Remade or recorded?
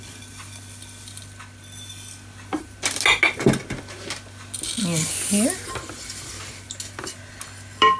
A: recorded